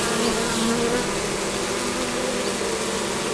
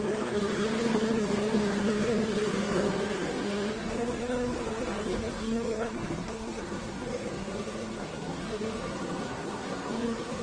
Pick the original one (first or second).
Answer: first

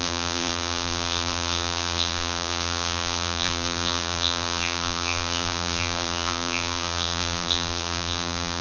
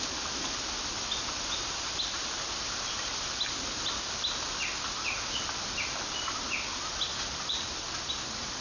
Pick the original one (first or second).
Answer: second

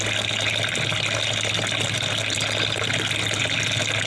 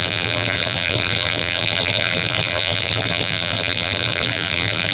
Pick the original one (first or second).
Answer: first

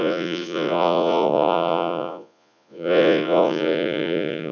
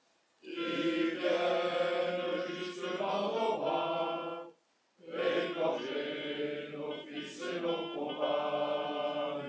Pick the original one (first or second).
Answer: second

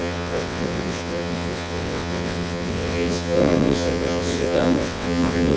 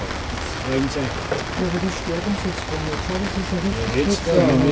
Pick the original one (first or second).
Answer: second